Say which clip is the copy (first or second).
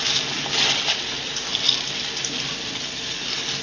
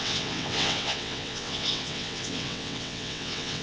second